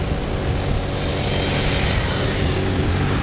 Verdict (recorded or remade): recorded